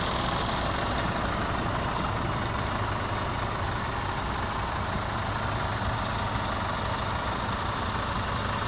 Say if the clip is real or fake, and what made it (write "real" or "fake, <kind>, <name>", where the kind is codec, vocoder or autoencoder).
real